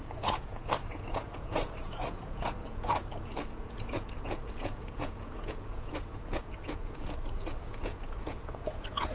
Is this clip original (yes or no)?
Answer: no